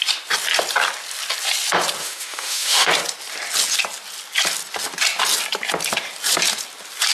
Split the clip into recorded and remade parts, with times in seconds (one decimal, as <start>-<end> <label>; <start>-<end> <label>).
0.0-2.0 recorded; 2.0-2.9 remade; 2.9-7.1 recorded